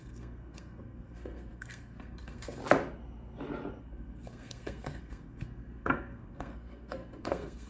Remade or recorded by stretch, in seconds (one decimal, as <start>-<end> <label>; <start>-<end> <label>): 0.0-2.6 remade; 2.6-3.8 recorded; 3.8-7.7 remade